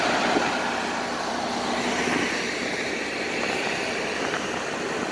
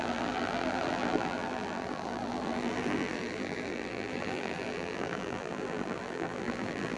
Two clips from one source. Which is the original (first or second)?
first